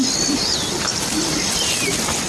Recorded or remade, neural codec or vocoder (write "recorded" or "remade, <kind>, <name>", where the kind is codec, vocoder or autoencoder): recorded